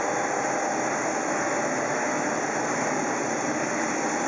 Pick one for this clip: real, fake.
real